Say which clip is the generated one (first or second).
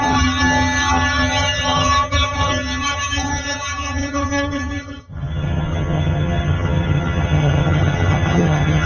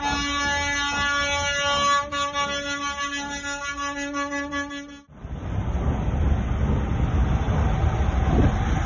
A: first